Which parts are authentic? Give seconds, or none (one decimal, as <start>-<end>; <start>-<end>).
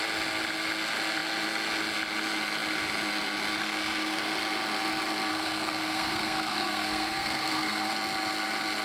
0.0-3.6; 4.3-5.3; 7.9-8.8